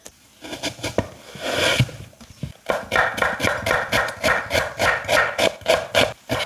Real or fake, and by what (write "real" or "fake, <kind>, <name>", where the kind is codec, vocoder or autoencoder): real